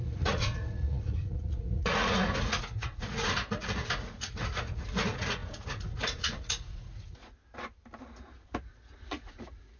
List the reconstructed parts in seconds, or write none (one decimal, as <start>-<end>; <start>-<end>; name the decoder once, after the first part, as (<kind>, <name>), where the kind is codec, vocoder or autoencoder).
0.0-7.4 (vocoder, Vocos); 8.7-9.8